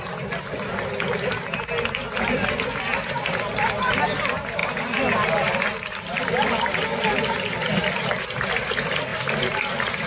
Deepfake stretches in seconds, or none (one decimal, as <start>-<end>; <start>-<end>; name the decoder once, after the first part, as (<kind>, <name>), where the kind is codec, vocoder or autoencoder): none